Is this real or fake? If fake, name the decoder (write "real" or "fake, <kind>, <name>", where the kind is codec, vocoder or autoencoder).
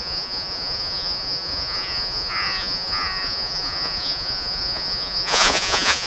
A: fake, vocoder, Vocos